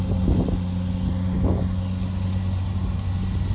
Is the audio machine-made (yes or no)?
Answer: no